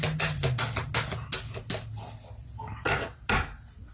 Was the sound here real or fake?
real